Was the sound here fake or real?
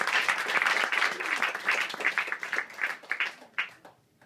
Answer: real